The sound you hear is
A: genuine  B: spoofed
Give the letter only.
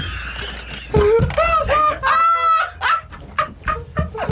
A